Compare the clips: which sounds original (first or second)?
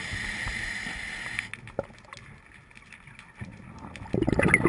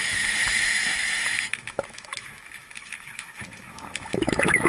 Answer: first